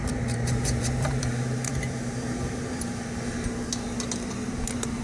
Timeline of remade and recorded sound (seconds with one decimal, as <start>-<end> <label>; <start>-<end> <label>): 0.0-3.0 remade; 3.0-5.0 recorded